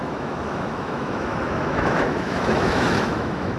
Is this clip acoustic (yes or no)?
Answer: no